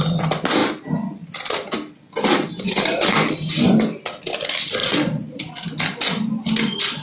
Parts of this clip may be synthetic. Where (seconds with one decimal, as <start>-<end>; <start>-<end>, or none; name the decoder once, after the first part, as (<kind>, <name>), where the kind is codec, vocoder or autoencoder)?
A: 4.8-5.4 (vocoder, Vocos)